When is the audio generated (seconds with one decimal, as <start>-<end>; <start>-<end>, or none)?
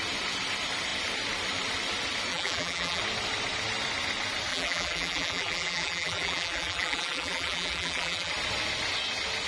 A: 2.3-3.0; 4.5-8.3